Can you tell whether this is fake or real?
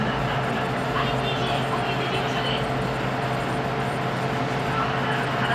real